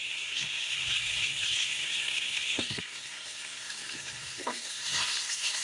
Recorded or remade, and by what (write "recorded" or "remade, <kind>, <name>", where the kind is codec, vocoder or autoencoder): remade, codec, SNAC